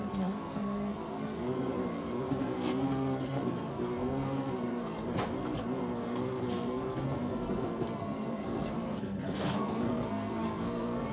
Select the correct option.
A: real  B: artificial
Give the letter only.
B